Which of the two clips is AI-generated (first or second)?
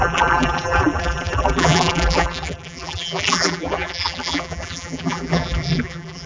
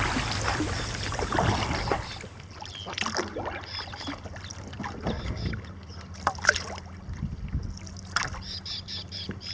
first